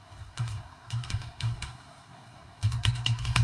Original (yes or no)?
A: no